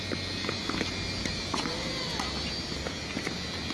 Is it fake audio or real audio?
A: real